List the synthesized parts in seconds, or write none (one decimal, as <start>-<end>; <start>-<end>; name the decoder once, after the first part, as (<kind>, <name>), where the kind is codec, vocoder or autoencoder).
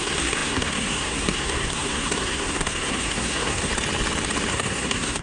0.0-3.7 (codec, SNAC); 4.5-5.2